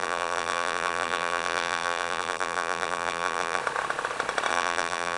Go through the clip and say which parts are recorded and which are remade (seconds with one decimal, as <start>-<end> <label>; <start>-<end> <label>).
0.0-3.6 remade; 3.6-4.5 recorded; 4.5-5.2 remade